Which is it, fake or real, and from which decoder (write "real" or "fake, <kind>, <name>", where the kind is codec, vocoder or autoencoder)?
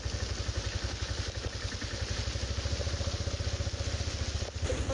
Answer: real